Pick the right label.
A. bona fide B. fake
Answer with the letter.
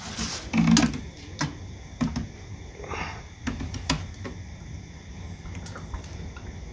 A